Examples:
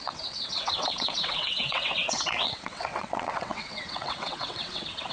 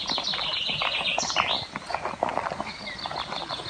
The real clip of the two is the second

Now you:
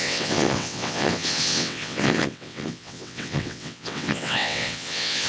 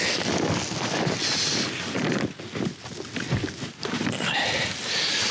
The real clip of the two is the second